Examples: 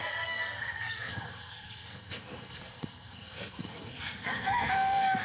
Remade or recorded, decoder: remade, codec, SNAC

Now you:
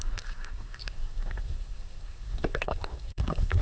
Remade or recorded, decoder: remade, codec, SNAC